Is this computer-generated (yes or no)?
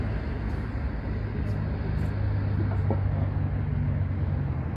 no